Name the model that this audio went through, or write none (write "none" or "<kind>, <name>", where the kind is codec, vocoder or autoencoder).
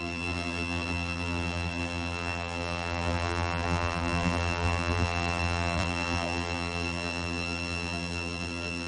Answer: vocoder, BigVGAN v2